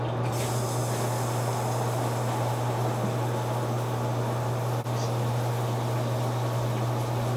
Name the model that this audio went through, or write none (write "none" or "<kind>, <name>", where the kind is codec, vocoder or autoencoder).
none